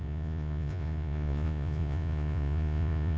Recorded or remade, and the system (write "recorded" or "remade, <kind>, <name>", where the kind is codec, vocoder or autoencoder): remade, vocoder, Vocos